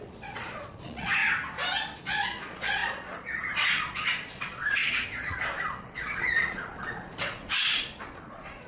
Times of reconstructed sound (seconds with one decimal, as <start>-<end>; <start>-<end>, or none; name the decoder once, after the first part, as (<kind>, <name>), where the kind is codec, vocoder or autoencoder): 0.0-1.2 (vocoder, Vocos); 2.0-8.7